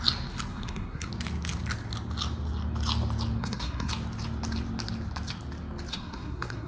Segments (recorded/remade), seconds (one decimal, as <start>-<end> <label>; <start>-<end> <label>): 0.0-0.5 recorded; 0.5-1.1 remade; 1.1-3.4 recorded; 3.4-3.9 remade; 3.9-5.9 recorded; 5.9-6.7 remade